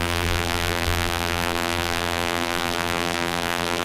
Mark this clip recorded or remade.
remade